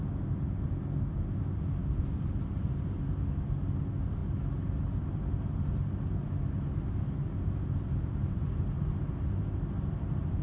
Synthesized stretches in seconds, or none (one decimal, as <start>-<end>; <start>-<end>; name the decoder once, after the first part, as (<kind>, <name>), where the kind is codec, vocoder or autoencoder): none